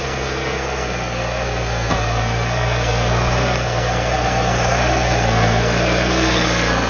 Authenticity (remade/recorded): remade